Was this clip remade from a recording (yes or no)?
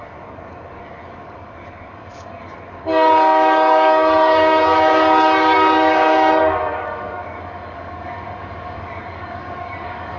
yes